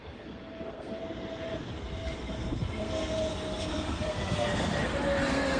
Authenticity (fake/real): fake